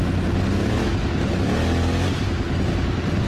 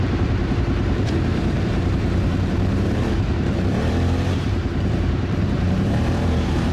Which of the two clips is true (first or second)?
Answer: first